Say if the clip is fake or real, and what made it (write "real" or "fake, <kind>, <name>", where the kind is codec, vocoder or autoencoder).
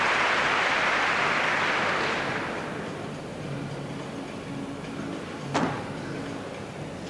real